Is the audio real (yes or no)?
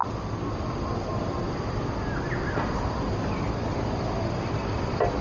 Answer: yes